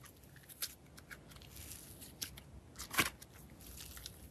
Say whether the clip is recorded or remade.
recorded